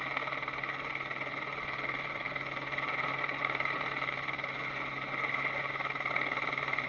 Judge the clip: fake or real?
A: real